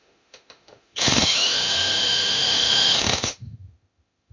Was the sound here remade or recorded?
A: remade